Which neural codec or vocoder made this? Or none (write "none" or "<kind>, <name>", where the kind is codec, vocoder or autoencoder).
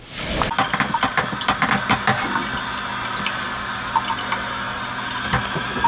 none